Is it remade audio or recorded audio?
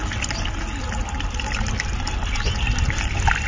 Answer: recorded